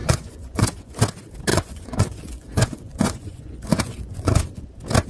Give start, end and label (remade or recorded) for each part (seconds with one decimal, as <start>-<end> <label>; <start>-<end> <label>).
0.0-1.0 remade; 1.0-1.5 recorded; 1.5-4.6 remade; 4.6-5.1 recorded